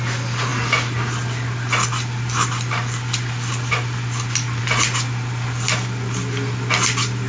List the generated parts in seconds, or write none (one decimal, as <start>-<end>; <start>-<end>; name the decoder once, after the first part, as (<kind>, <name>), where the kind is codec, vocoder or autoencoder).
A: none